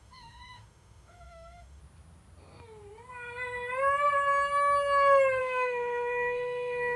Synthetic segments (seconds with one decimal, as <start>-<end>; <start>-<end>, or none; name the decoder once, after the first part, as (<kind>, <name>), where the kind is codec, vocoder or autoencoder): 0.0-1.8 (autoencoder, DAC-VAE); 5.4-7.0